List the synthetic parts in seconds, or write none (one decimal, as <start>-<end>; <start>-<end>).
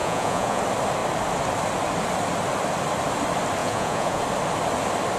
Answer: 0.0-0.6; 3.6-4.2